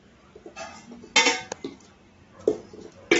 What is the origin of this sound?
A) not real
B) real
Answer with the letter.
B